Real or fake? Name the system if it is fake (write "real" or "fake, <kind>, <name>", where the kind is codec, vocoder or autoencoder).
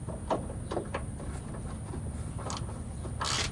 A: real